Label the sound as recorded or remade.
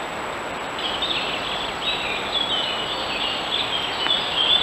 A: recorded